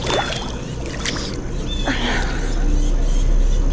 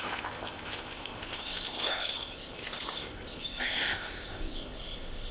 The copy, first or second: second